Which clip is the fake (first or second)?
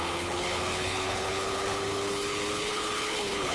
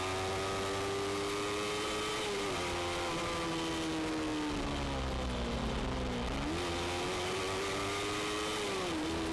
first